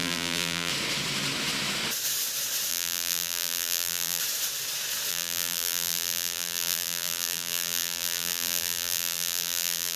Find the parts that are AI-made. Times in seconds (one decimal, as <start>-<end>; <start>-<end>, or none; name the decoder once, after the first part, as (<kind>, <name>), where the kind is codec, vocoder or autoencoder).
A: 0.0-0.7 (vocoder, BigVGAN v2); 2.7-4.2; 5.1-10.0